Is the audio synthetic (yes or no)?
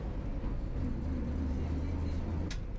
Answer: no